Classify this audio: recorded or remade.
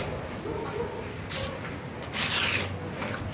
recorded